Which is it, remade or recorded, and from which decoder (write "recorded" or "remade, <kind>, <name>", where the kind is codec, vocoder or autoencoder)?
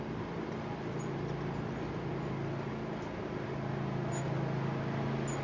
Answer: recorded